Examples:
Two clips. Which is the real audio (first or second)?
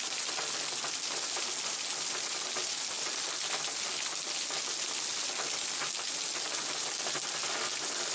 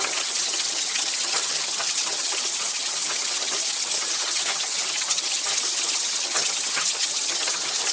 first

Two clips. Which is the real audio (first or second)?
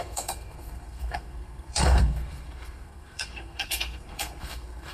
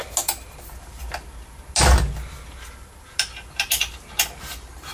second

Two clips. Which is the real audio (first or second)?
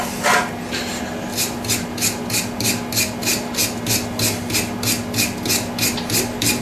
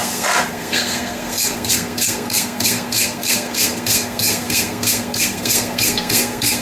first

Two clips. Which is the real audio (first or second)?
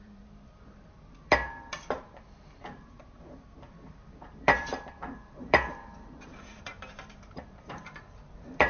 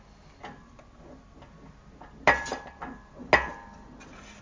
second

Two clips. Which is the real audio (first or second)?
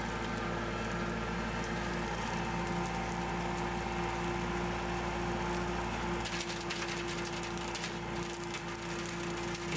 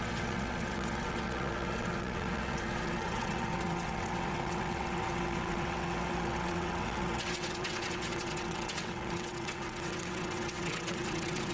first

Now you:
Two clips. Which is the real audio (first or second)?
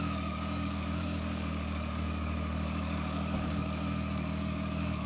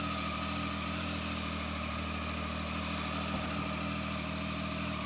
second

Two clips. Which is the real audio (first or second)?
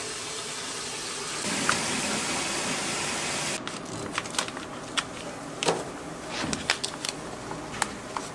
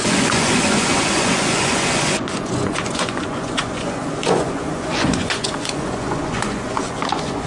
first